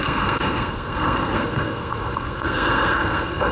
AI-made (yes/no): yes